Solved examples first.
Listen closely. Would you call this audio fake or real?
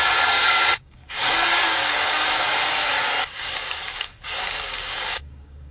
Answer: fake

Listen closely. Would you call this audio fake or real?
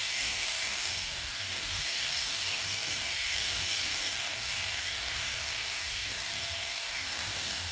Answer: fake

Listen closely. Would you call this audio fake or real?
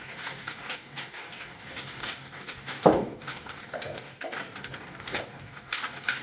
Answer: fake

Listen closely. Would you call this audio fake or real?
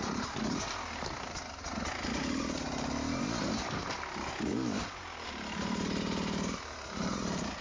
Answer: real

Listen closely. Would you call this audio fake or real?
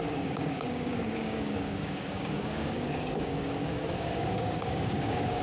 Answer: fake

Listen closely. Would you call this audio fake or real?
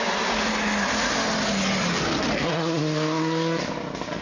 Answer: real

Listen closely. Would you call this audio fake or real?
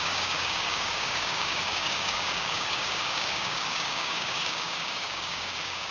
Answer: fake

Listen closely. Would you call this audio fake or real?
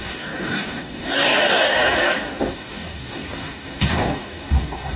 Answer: fake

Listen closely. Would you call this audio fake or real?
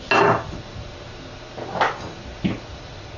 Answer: real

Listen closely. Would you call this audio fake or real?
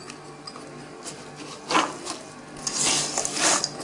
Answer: real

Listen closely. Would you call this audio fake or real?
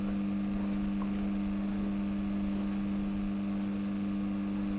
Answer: real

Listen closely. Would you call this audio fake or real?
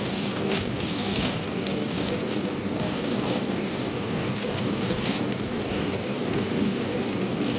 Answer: fake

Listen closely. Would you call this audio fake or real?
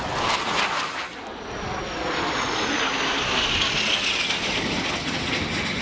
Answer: real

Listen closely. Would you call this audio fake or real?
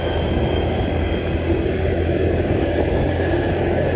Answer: fake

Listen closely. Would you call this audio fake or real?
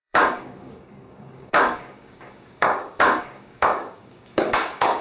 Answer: fake